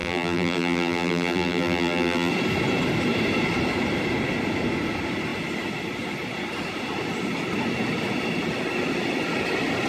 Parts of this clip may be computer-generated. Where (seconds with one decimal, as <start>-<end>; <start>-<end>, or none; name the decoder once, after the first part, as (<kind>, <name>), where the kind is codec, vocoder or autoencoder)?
0.0-2.3 (vocoder, BigVGAN v2)